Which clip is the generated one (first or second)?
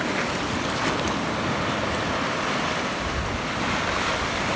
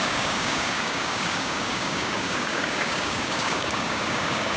second